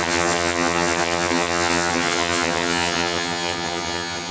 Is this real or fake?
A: fake